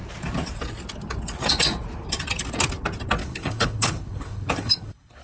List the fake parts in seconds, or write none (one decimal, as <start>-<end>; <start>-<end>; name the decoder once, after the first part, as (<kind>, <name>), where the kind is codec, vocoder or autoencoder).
3.2-5.2 (codec, HILCodec)